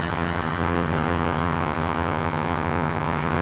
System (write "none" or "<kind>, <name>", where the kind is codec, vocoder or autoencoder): vocoder, HiFi-GAN